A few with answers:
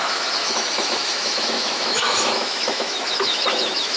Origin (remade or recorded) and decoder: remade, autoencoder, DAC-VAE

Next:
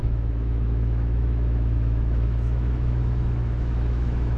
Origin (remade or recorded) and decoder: remade, autoencoder, DAC-VAE